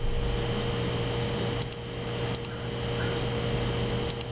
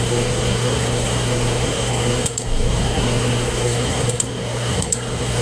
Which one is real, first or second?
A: first